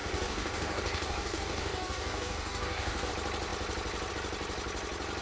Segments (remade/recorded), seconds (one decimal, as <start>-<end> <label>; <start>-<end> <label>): 0.0-3.1 remade; 3.1-5.2 recorded